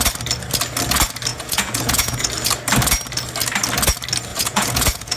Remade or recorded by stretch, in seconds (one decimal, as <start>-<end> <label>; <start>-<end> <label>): 0.0-1.3 recorded; 1.3-2.3 remade; 2.3-4.3 recorded; 4.3-5.2 remade